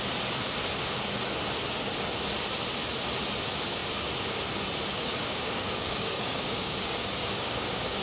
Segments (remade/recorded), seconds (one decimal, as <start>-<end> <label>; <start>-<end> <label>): 0.0-4.9 recorded; 4.9-8.0 remade